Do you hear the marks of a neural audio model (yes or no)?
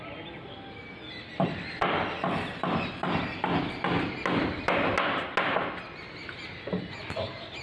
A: no